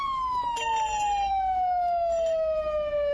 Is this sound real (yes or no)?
yes